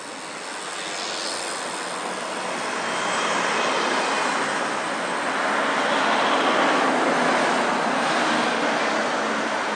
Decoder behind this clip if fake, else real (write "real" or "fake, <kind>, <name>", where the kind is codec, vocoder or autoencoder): real